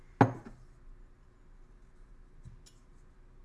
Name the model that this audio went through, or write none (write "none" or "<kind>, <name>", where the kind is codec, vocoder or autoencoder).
none